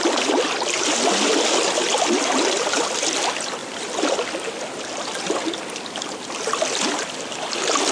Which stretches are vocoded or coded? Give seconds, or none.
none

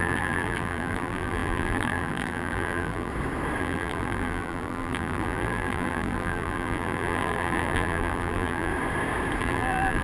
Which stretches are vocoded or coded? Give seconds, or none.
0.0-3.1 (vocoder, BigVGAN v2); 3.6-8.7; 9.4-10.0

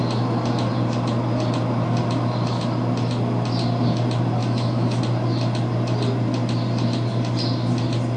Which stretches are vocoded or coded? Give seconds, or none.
4.4-5.0 (autoencoder, DAC-VAE)

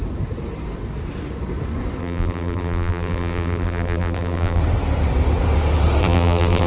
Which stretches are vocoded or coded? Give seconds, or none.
2.0-4.6 (vocoder, BigVGAN v2); 6.0-6.7